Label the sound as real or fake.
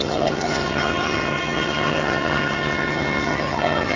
fake